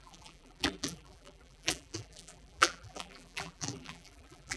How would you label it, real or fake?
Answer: fake